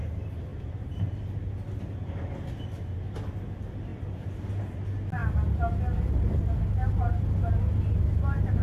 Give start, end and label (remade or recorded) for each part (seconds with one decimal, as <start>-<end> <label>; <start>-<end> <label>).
0.0-0.5 recorded; 0.5-1.1 remade; 1.1-8.6 recorded